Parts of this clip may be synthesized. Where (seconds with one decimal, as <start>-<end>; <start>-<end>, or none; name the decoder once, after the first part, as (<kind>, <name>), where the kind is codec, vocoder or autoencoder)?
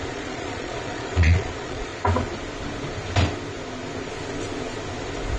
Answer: 0.0-1.9 (vocoder, Vocos)